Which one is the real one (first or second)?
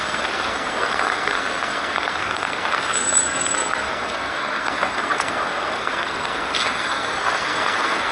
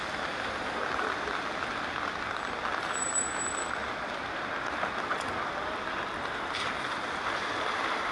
second